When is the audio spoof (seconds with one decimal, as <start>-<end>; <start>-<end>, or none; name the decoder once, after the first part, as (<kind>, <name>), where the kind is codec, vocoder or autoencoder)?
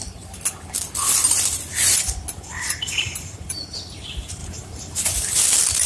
4.4-5.0 (vocoder, BigVGAN v2)